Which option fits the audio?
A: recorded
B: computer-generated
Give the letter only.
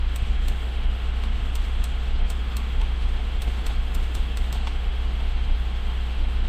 B